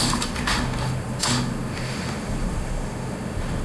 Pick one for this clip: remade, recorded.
remade